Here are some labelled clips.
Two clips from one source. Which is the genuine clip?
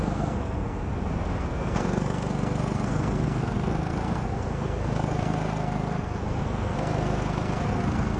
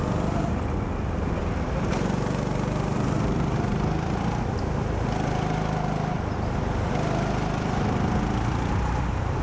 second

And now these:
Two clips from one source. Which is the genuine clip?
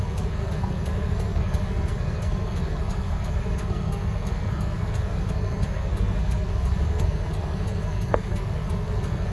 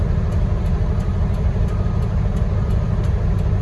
second